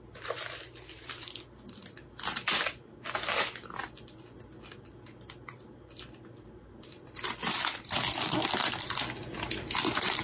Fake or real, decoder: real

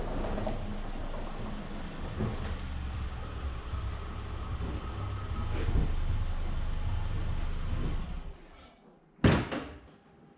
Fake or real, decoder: real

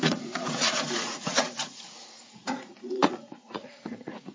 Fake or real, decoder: fake, vocoder, Vocos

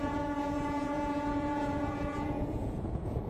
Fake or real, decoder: fake, vocoder, Vocos